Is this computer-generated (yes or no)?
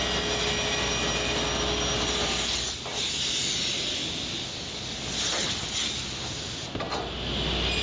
no